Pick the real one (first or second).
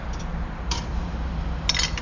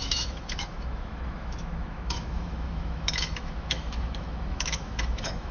first